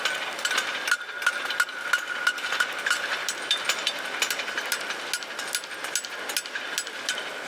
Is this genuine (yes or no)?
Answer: yes